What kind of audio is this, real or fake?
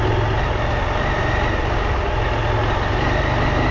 real